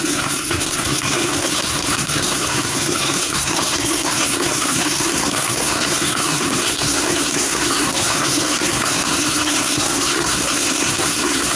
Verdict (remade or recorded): remade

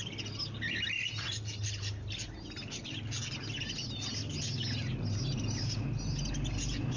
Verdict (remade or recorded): recorded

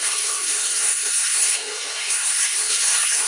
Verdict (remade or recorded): remade